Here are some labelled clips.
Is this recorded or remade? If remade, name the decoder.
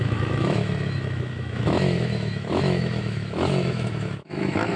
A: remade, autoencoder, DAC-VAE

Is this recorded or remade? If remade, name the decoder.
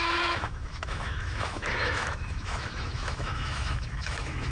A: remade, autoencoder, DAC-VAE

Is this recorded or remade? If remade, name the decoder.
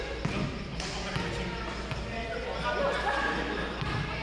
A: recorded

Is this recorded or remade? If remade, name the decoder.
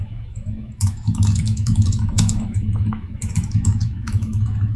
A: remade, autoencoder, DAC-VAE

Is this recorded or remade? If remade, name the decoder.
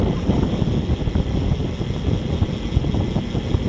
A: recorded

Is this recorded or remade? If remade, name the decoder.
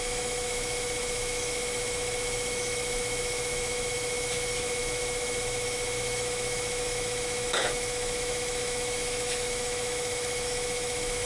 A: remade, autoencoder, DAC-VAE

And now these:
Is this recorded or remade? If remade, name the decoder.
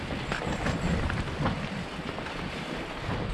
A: recorded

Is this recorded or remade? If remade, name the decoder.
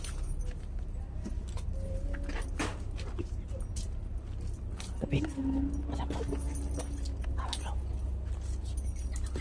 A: recorded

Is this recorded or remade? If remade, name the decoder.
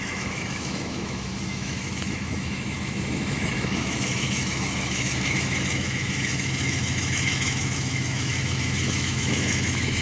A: remade, autoencoder, DAC-VAE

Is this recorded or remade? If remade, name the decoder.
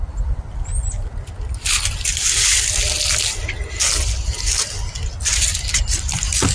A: recorded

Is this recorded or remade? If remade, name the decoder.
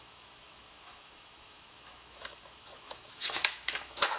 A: remade, autoencoder, DAC-VAE